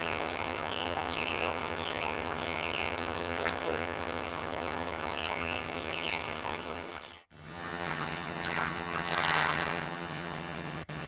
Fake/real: fake